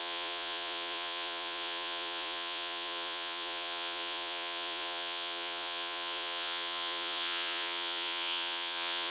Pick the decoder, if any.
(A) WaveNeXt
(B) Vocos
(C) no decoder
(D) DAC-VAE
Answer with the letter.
B